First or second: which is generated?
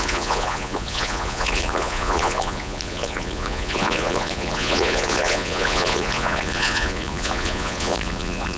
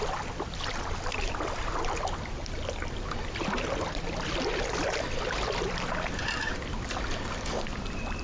first